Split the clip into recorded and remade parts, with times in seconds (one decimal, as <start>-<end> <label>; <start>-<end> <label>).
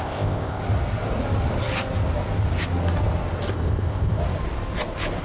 0.0-0.6 remade; 0.6-3.5 recorded; 3.5-4.2 remade; 4.2-5.2 recorded